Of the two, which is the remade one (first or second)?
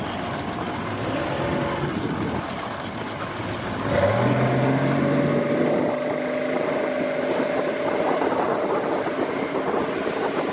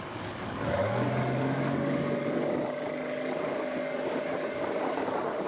second